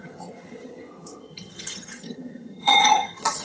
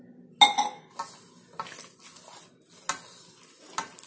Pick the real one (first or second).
second